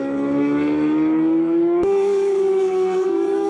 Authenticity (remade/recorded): remade